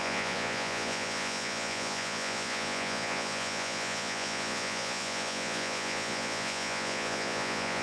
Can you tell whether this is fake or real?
fake